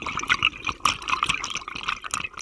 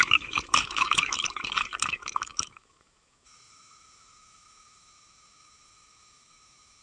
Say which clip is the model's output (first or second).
second